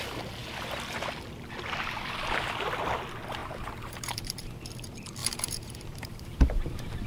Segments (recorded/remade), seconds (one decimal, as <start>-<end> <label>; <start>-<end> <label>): 0.0-3.4 recorded; 3.4-4.5 remade; 4.5-5.2 recorded; 5.2-7.1 remade